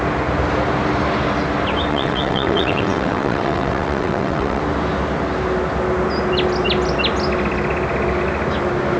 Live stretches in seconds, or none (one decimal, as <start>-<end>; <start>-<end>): 0.0-1.9; 4.6-9.0